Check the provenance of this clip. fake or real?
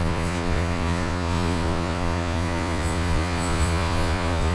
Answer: fake